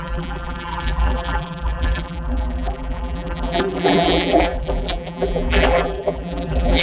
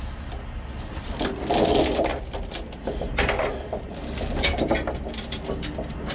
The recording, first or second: second